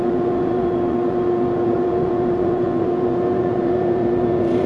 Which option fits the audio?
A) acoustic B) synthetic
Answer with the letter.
B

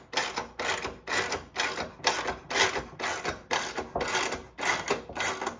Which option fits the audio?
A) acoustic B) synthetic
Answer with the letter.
A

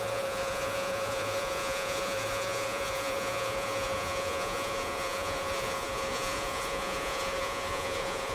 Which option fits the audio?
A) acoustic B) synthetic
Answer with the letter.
B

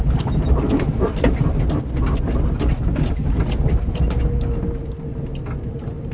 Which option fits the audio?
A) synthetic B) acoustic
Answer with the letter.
B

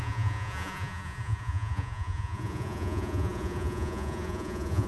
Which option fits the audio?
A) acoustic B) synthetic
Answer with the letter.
B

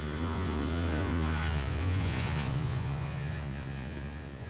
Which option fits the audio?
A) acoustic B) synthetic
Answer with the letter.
B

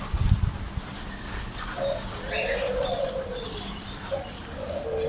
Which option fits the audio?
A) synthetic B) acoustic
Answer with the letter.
B